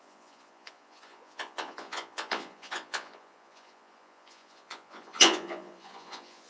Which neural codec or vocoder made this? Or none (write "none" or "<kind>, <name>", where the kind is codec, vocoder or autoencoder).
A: vocoder, Vocos